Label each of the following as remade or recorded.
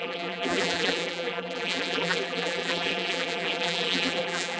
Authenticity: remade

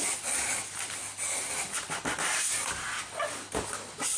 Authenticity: recorded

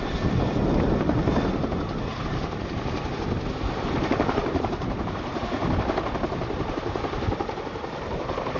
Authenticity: recorded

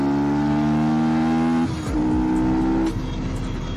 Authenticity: recorded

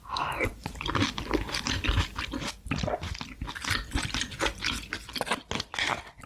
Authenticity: recorded